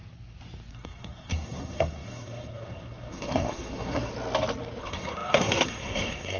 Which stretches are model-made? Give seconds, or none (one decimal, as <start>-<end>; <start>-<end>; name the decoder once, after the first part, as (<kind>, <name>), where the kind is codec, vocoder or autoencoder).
0.7-4.1 (codec, SNAC); 4.8-6.4